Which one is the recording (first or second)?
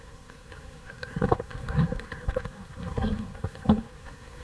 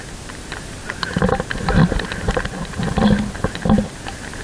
second